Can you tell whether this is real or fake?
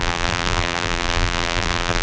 fake